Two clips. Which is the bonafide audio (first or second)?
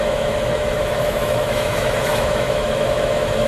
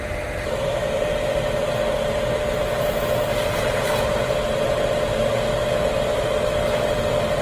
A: second